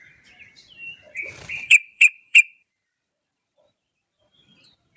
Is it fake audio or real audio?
fake